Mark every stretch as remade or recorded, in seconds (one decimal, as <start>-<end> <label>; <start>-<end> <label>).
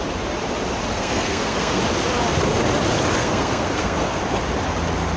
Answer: 0.0-0.9 recorded; 0.9-1.8 remade; 1.8-3.2 recorded; 3.2-4.2 remade; 4.2-5.2 recorded